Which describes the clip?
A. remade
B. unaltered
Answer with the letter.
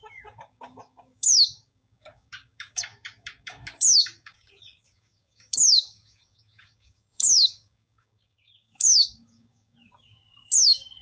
A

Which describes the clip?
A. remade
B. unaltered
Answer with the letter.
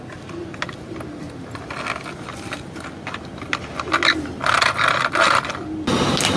B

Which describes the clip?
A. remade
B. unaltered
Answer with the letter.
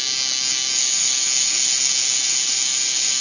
B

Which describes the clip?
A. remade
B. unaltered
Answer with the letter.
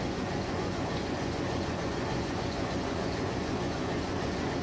A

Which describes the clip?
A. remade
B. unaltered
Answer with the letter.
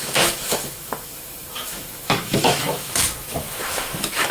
A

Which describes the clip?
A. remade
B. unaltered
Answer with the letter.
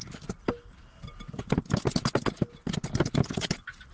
B